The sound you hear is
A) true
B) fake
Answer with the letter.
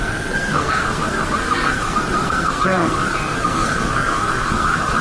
B